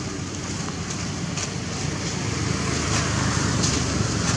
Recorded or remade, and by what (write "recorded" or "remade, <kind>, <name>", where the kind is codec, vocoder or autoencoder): recorded